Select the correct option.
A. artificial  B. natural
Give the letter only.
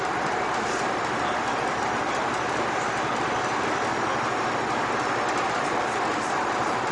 B